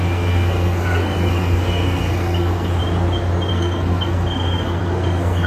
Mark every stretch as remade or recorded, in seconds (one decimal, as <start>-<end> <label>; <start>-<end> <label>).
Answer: 0.0-2.8 remade; 2.8-3.5 recorded; 3.5-5.5 remade